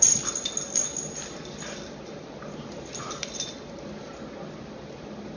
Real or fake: real